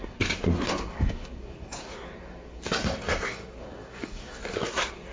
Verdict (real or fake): fake